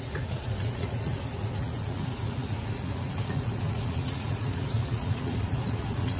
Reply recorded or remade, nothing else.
remade